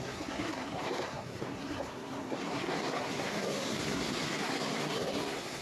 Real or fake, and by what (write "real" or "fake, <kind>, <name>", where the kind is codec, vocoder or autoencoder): fake, codec, SNAC